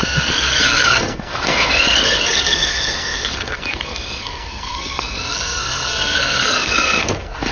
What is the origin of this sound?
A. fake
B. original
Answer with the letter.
A